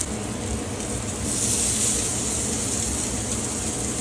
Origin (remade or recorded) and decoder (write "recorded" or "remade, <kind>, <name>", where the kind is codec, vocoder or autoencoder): recorded